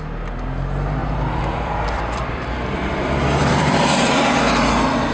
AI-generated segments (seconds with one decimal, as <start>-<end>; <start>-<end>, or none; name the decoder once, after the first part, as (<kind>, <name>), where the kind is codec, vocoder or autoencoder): 1.0-4.1 (vocoder, BigVGAN v2)